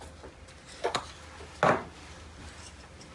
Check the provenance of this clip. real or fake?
real